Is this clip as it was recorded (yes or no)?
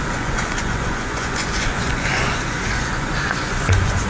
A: no